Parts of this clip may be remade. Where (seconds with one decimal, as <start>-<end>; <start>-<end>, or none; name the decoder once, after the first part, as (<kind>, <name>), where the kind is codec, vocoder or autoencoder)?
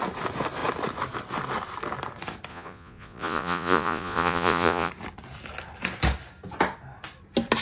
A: 2.5-4.9 (vocoder, Vocos)